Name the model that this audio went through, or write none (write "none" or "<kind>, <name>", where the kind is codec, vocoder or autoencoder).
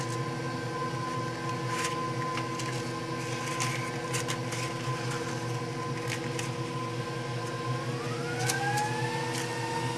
none